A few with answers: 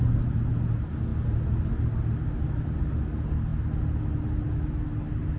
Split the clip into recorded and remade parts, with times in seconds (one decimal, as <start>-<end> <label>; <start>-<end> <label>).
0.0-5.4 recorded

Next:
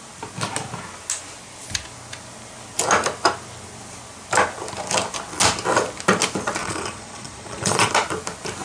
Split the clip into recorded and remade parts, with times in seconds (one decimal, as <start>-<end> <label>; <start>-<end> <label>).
0.0-6.6 recorded; 6.6-7.9 remade; 7.9-8.6 recorded

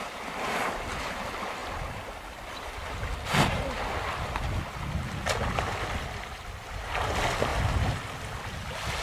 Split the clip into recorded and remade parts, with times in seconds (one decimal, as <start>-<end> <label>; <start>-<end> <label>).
0.0-0.9 remade; 0.9-9.0 recorded

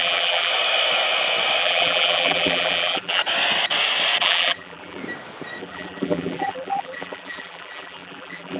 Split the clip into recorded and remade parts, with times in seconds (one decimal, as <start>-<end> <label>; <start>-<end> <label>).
0.0-0.5 remade; 0.5-1.6 recorded; 1.6-3.2 remade; 3.2-4.2 recorded; 4.2-5.0 remade; 5.0-5.6 recorded; 5.6-8.6 remade

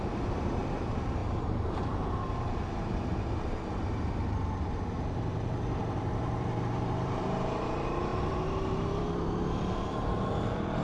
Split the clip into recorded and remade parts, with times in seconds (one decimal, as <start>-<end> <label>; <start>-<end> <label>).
0.0-10.8 remade

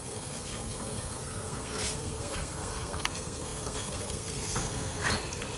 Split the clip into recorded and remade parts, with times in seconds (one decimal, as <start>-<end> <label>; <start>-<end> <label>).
0.0-5.0 remade; 5.0-5.6 recorded

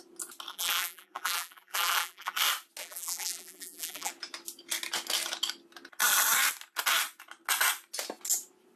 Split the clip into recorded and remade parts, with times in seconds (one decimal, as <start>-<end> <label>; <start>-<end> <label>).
0.0-0.5 recorded; 0.5-2.4 remade; 2.4-2.8 recorded; 2.8-4.1 remade; 4.1-8.8 recorded